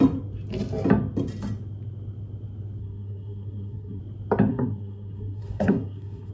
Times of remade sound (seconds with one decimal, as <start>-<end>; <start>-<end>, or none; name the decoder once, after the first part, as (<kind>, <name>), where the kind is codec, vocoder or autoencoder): 2.8-4.0 (codec, SNAC); 4.5-6.3